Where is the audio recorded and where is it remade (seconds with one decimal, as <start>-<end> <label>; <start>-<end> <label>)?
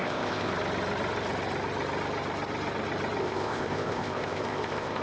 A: 0.0-0.5 remade; 0.5-3.2 recorded; 3.2-5.0 remade